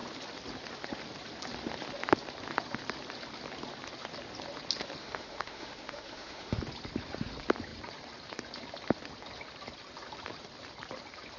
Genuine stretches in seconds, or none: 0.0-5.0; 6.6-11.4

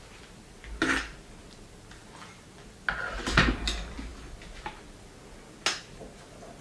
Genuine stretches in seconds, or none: 0.0-6.6

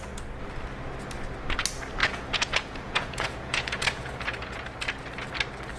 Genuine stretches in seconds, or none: 0.0-2.0; 4.6-5.8

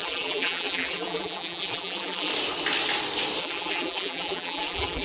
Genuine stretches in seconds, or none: 2.3-3.4

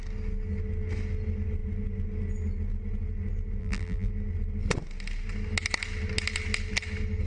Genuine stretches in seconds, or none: 0.0-3.6; 4.1-7.3

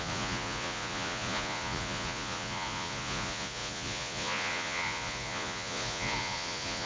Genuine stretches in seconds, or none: none

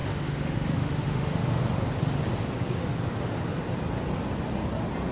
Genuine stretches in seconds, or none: 1.6-5.1